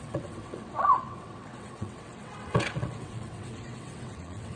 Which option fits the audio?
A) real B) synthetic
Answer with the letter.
B